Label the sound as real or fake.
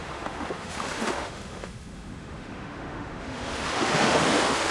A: fake